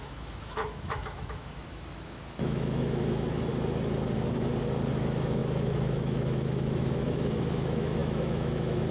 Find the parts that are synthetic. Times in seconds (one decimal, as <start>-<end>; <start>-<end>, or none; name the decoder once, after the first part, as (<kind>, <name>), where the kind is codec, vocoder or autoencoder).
0.0-3.5 (autoencoder, DAC-VAE); 4.9-8.9